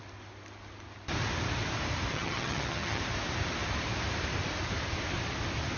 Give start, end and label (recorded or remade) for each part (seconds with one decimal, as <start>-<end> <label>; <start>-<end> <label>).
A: 0.0-2.1 recorded; 2.1-3.0 remade; 3.0-5.8 recorded